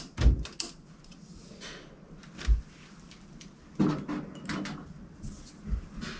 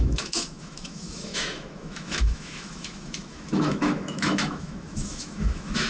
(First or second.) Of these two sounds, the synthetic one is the second